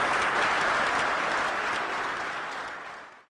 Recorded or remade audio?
recorded